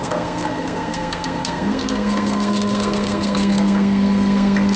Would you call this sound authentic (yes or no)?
no